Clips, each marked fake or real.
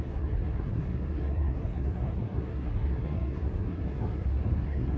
fake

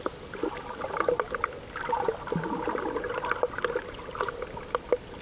real